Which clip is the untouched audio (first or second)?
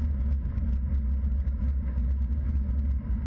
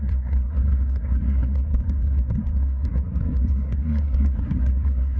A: first